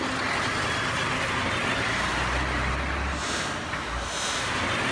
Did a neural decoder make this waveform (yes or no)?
no